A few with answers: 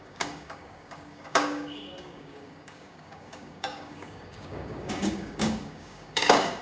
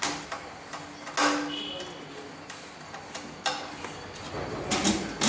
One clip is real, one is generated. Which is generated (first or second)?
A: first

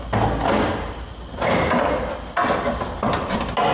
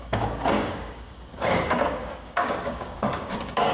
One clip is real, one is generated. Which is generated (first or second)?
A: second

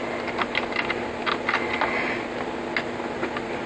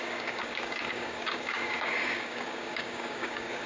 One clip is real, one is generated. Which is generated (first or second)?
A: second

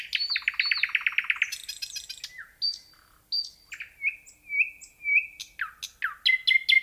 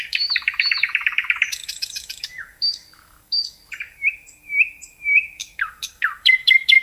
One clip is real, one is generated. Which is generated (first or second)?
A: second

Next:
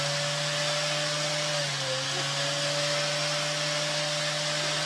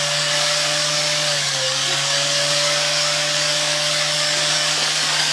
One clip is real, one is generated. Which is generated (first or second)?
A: second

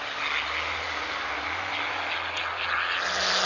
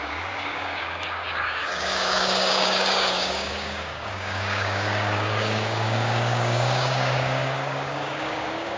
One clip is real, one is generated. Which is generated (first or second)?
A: second